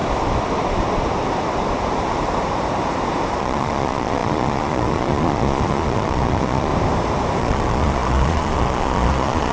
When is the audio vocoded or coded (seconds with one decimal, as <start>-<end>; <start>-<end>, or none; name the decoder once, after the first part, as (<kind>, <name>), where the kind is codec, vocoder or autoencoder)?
3.4-6.7 (vocoder, Vocos); 7.4-9.5